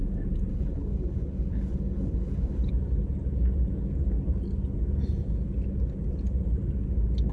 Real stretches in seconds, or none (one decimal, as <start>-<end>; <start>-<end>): 0.0-0.5; 2.7-7.3